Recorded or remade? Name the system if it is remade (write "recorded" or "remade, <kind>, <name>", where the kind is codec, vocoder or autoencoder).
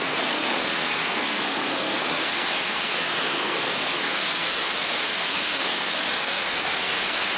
remade, codec, SNAC